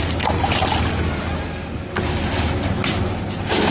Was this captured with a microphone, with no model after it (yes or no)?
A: yes